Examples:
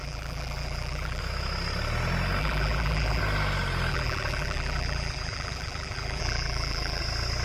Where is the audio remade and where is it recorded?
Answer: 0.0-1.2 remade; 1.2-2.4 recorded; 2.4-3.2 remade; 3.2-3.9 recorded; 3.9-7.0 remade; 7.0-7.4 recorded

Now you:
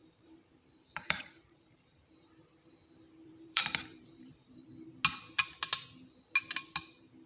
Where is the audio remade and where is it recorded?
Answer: 0.0-2.0 remade; 2.0-3.2 recorded; 3.2-4.7 remade; 4.7-7.3 recorded

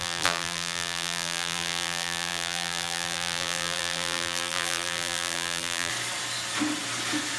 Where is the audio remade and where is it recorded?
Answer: 0.0-5.9 remade; 5.9-7.4 recorded

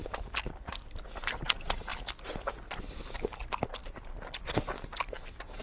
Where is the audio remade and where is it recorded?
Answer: 0.0-1.2 remade; 1.2-1.9 recorded; 1.9-4.6 remade; 4.6-5.6 recorded

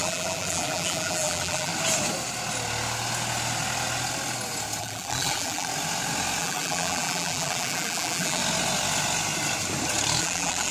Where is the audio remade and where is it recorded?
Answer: 0.0-1.7 remade; 1.7-4.8 recorded; 4.8-5.7 remade; 5.7-6.4 recorded; 6.4-8.4 remade; 8.4-10.2 recorded; 10.2-10.7 remade

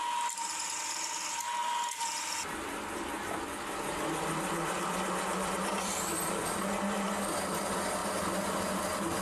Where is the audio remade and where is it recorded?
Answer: 0.0-5.3 recorded; 5.3-6.4 remade; 6.4-9.2 recorded